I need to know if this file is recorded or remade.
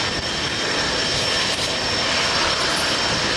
recorded